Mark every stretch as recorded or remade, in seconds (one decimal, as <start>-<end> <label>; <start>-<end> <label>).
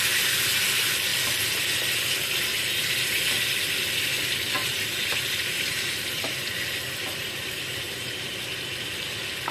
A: 0.0-4.6 recorded; 4.6-6.0 remade; 6.0-7.2 recorded; 7.2-8.3 remade; 8.3-9.5 recorded